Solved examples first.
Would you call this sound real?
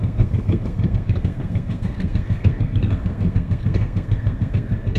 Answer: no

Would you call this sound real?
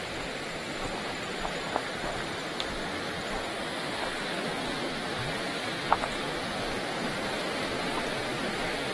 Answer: yes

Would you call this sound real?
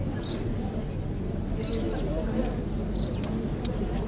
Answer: yes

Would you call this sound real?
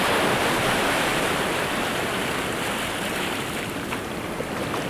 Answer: yes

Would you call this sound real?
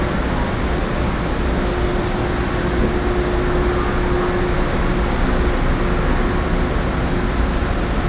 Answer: yes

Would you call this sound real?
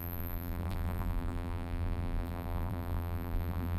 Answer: no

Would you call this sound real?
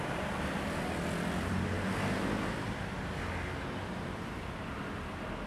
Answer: yes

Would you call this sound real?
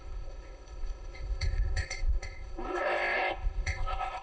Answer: no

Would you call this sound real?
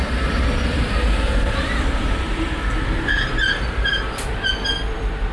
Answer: no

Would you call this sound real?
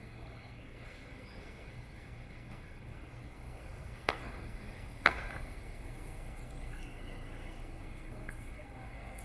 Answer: no